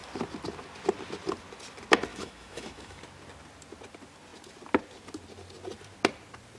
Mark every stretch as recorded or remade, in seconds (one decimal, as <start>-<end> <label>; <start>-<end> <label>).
0.0-2.1 recorded; 2.1-3.0 remade; 3.0-6.6 recorded